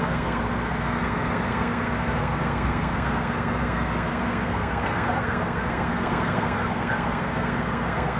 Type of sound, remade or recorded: remade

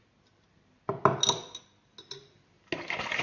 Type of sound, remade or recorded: recorded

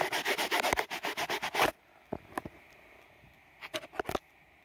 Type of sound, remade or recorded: recorded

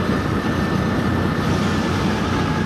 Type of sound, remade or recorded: recorded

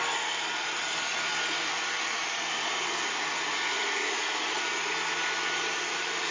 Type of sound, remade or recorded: recorded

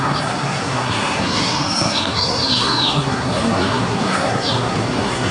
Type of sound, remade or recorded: remade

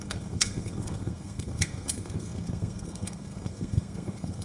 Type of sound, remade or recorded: remade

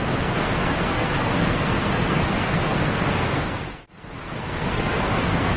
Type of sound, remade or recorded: remade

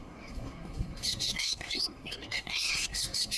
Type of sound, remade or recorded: remade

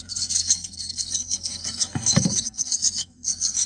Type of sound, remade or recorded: remade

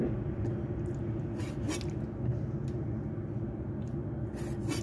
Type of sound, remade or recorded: recorded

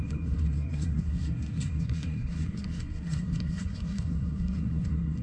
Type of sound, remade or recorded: remade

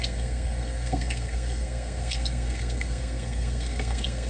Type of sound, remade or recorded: remade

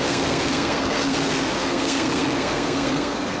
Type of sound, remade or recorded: remade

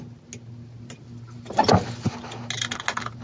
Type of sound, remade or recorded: recorded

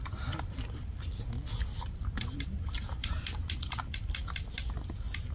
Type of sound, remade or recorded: recorded